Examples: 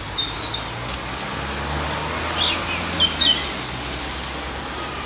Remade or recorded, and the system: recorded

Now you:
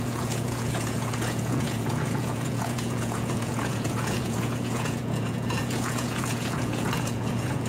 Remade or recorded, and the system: remade, vocoder, Vocos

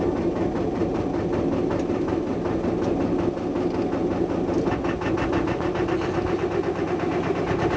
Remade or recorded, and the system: recorded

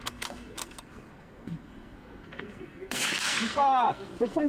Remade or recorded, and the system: remade, codec, SNAC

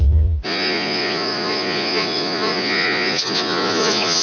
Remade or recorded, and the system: remade, vocoder, Vocos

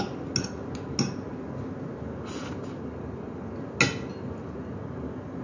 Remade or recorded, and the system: recorded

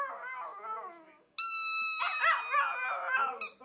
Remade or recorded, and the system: recorded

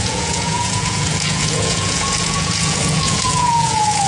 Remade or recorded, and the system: remade, vocoder, Vocos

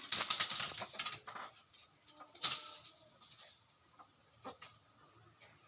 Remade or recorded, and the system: recorded